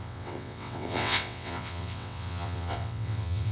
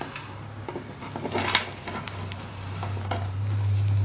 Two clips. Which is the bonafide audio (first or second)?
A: second